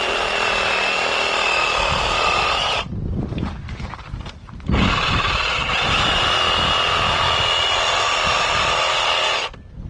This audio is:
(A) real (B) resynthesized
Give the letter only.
A